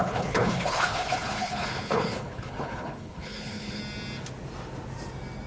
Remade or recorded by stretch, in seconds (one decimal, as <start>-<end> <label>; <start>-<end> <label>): 0.0-3.8 remade; 3.8-5.5 recorded